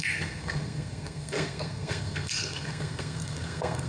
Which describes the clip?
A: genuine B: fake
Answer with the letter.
B